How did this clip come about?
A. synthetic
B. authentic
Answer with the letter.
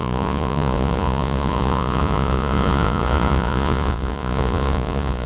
A